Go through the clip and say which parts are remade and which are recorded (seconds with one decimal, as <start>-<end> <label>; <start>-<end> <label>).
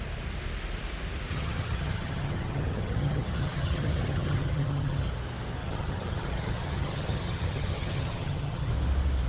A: 0.0-1.3 recorded; 1.3-5.1 remade; 5.1-5.6 recorded; 5.6-8.7 remade; 8.7-9.3 recorded